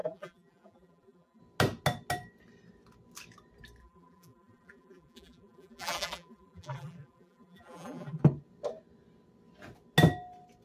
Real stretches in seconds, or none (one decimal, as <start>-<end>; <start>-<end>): 1.4-3.8; 8.2-10.6